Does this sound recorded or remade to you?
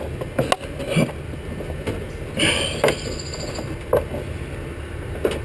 recorded